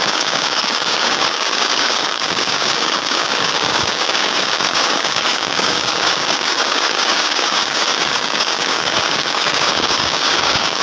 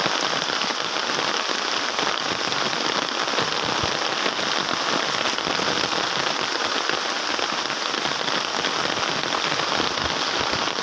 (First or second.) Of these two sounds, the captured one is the second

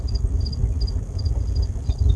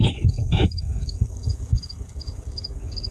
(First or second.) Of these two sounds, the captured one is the first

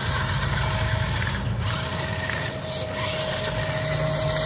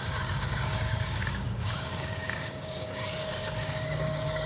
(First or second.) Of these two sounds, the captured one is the first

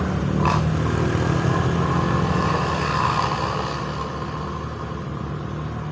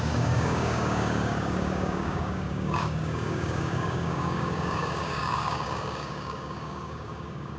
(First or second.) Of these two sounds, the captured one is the first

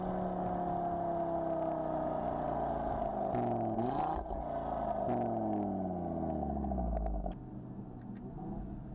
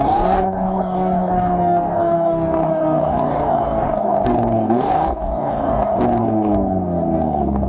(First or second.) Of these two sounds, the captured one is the first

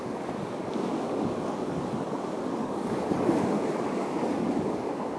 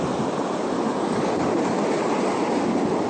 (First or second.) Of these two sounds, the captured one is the second